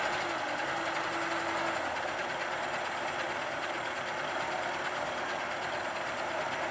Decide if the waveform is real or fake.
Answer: real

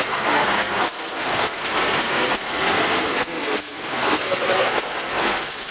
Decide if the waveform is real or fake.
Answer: fake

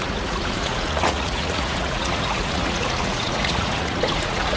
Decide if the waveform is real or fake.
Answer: fake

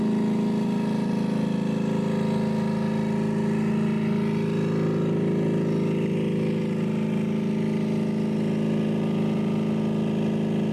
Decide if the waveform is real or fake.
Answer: real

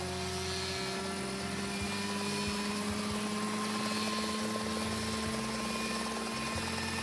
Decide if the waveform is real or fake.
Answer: real